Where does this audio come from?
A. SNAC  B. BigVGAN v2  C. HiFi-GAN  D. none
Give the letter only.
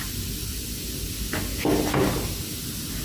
D